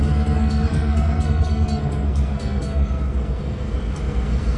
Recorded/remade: remade